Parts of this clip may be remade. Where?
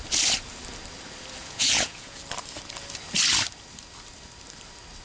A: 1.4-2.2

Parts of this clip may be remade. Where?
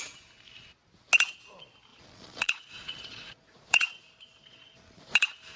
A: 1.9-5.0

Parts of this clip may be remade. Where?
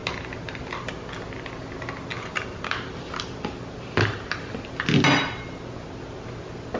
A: none